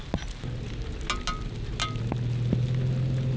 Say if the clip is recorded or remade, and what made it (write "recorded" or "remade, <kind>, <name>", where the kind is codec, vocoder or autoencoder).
recorded